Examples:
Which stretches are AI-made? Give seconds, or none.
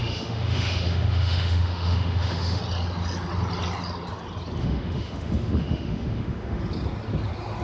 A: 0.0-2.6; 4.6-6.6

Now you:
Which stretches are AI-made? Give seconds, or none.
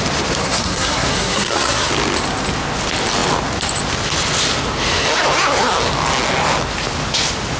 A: 0.4-1.9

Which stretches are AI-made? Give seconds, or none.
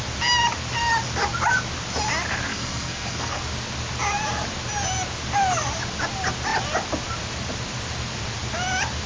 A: 2.5-3.4